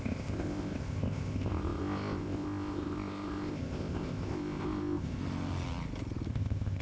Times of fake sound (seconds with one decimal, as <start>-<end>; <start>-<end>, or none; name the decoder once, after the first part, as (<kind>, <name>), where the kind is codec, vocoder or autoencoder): 0.0-5.2 (codec, ZipCodec); 6.3-6.8